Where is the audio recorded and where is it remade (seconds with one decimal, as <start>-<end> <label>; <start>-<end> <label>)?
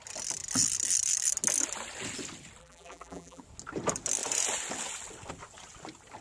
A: 0.0-2.6 recorded; 2.6-3.4 remade; 3.4-6.2 recorded